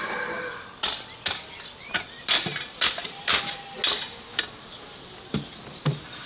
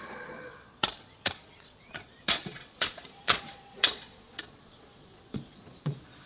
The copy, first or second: second